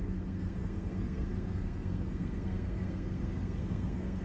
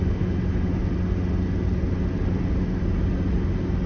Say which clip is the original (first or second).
second